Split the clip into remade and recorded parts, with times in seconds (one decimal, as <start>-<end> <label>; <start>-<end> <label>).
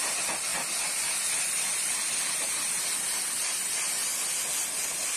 0.0-5.2 recorded